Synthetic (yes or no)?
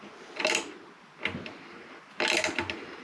no